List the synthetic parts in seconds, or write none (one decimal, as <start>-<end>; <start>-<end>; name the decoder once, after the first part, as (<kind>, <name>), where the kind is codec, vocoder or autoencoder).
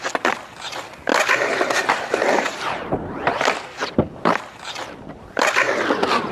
0.0-1.1 (vocoder, BigVGAN v2); 1.9-6.3